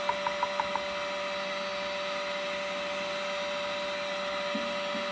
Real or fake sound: real